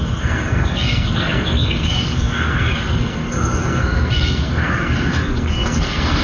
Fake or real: fake